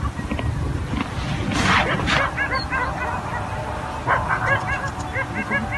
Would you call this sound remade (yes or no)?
no